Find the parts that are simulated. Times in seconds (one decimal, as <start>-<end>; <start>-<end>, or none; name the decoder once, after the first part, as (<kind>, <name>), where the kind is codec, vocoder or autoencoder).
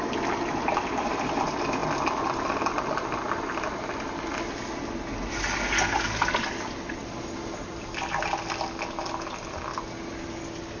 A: none